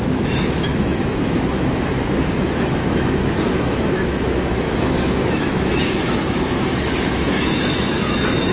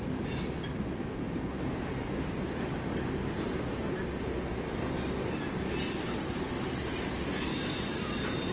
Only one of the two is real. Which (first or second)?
second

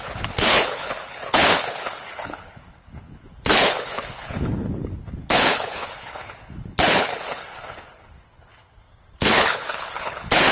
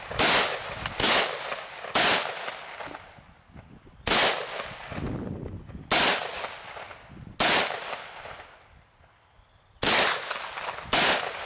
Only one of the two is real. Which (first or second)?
second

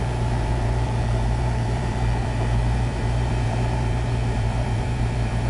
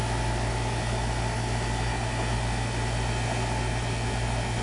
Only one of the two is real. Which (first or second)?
second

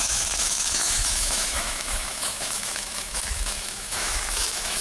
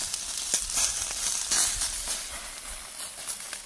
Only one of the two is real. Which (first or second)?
second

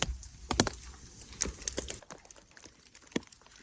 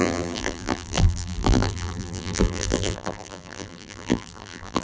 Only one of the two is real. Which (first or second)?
first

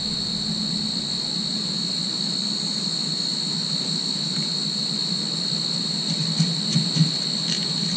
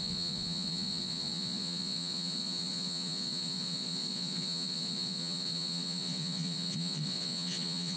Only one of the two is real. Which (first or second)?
first